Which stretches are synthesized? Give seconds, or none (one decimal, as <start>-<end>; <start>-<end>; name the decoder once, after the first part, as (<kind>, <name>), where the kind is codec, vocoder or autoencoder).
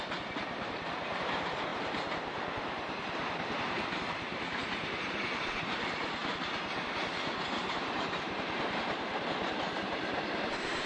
0.0-6.2 (vocoder, BigVGAN v2); 7.6-10.9